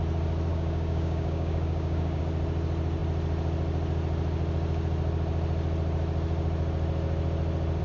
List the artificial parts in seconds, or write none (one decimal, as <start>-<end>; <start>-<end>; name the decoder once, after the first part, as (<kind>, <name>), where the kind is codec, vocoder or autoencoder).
0.5-2.2 (codec, DAC)